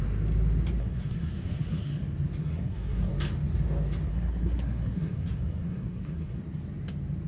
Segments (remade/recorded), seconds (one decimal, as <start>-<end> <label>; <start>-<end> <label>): 0.0-0.8 recorded; 0.8-1.9 remade; 1.9-2.4 recorded; 2.4-3.1 remade; 3.1-4.1 recorded; 4.1-6.4 remade; 6.4-7.3 recorded